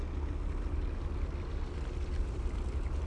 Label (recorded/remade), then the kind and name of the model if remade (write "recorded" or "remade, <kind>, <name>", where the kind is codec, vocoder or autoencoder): recorded